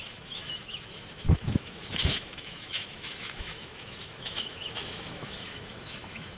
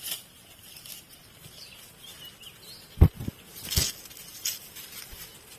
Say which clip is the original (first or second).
second